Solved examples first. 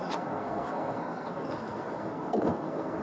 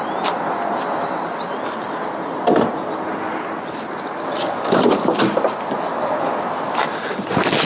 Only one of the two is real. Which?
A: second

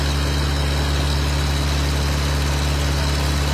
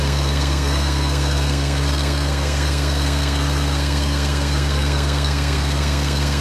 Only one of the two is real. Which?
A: first